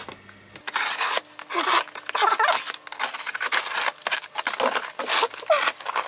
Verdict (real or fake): real